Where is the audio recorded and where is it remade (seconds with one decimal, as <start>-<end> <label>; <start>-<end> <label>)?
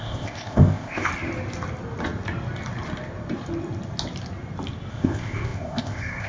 0.0-1.1 remade; 1.1-4.9 recorded; 4.9-6.3 remade